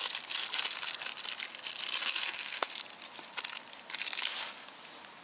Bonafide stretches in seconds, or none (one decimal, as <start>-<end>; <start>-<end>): 0.0-2.0; 2.7-5.2